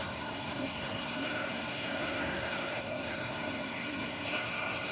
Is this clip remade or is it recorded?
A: remade